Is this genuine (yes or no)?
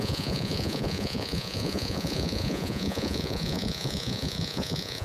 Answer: no